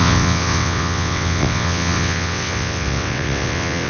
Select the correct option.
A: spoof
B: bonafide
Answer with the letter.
A